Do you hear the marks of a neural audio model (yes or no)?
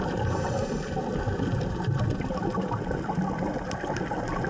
no